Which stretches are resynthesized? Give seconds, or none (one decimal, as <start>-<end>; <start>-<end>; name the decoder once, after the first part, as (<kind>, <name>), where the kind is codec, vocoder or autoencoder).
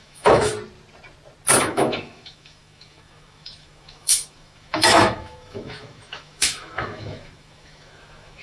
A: 0.0-0.5 (autoencoder, DAC-VAE); 1.6-8.4